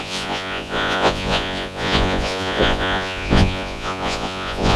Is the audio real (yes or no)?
no